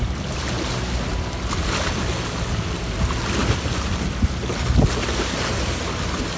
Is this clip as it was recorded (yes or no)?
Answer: yes